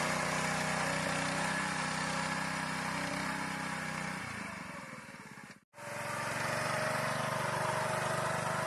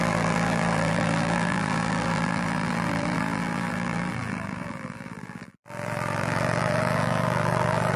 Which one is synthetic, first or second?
second